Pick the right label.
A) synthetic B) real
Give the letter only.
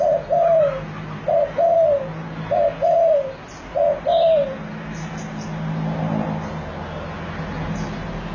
B